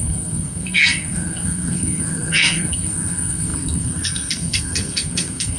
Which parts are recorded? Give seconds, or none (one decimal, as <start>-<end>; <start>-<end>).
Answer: none

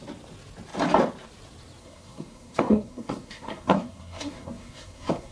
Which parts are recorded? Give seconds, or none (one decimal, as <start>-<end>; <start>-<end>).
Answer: 0.0-1.8